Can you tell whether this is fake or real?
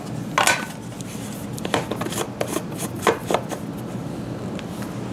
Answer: real